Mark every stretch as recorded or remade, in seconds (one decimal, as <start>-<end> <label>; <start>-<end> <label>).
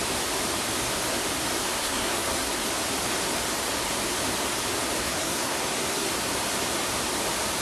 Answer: 0.0-1.8 recorded; 1.8-2.7 remade; 2.7-5.0 recorded; 5.0-6.1 remade; 6.1-7.6 recorded